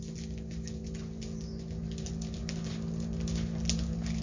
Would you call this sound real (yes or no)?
yes